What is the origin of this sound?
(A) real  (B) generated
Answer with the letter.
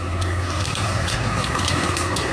B